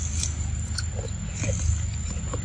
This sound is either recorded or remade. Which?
recorded